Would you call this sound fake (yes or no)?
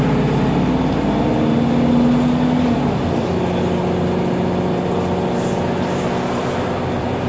no